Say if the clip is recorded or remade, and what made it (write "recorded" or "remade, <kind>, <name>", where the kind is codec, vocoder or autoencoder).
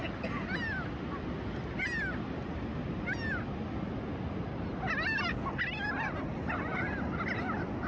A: recorded